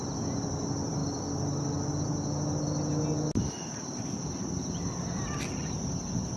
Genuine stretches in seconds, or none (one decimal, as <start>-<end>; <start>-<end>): 0.0-6.4